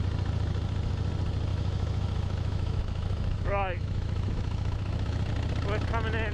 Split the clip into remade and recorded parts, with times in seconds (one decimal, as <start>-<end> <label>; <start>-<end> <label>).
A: 0.0-1.5 recorded; 1.5-5.3 remade; 5.3-6.3 recorded